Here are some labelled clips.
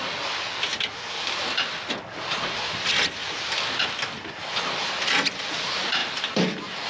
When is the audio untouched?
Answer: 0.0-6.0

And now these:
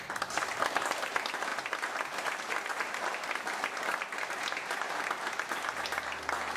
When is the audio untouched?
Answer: 0.0-6.6

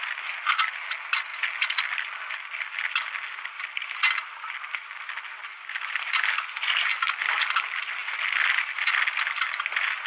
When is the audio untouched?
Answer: 0.0-10.1

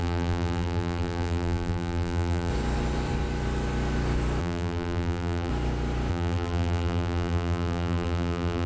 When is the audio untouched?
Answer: 2.5-4.4; 5.5-6.1

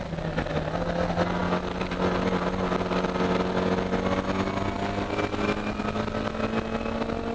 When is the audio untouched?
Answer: 0.0-7.3

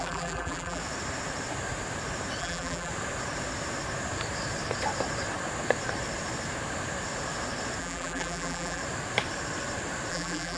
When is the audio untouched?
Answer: 0.8-2.4; 2.9-7.8; 8.8-10.1